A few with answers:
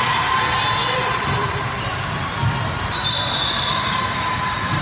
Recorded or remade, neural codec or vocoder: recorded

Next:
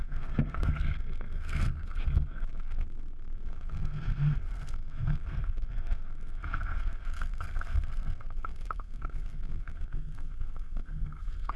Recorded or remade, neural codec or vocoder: remade, codec, SNAC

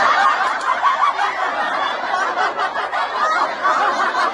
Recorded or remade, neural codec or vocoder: recorded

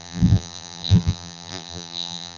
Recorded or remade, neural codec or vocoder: remade, vocoder, BigVGAN v2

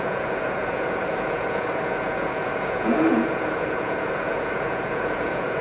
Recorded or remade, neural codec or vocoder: remade, vocoder, Vocos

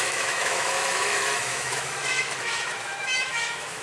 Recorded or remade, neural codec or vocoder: remade, autoencoder, DAC-VAE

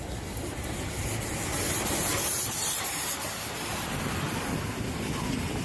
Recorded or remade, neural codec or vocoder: recorded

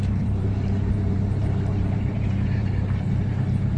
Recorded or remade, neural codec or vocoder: remade, vocoder, BigVGAN v2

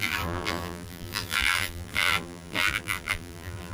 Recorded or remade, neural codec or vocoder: remade, vocoder, BigVGAN v2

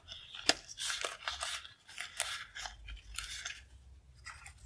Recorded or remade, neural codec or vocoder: recorded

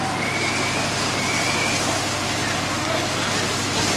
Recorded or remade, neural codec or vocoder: recorded